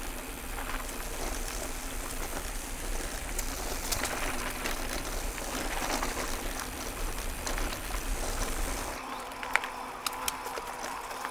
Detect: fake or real real